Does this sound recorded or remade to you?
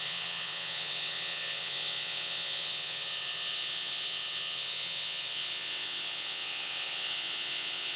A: remade